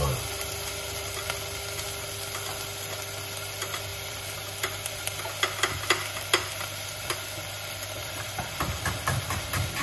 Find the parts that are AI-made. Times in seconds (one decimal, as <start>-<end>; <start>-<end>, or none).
3.9-5.0; 8.0-8.9